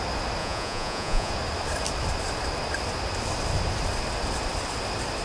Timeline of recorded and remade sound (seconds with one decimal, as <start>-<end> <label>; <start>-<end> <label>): 0.0-0.4 recorded; 0.4-1.3 remade; 1.3-5.2 recorded